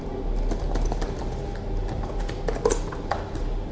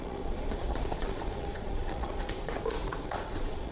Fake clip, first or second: second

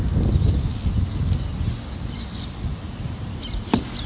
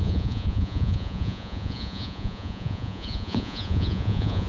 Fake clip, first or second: second